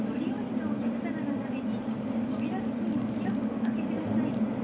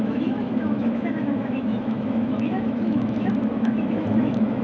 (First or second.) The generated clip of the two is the second